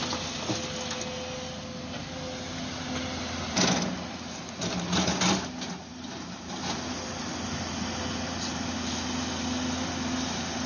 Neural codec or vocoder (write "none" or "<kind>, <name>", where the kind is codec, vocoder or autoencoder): none